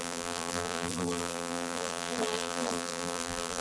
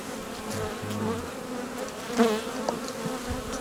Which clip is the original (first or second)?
second